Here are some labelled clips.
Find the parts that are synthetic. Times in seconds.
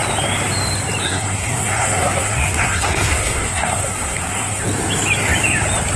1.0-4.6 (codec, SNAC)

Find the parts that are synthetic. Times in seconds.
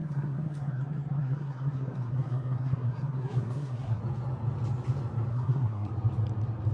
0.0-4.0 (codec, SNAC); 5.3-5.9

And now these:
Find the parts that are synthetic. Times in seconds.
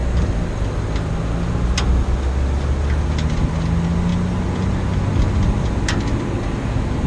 none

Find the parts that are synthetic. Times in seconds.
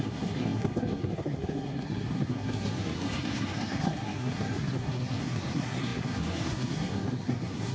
0.0-7.7 (codec, SNAC)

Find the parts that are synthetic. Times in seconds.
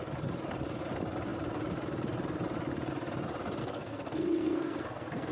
3.6-5.3 (codec, SNAC)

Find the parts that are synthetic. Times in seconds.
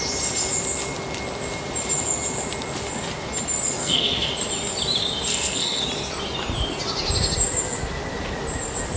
3.8-4.3 (codec, SNAC); 5.3-5.8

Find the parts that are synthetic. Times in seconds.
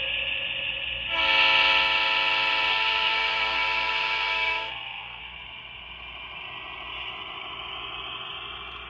2.7-5.2 (codec, SNAC)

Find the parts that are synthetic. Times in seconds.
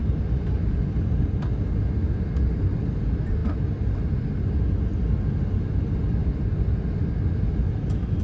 none